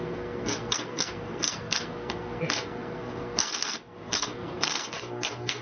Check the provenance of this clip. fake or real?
fake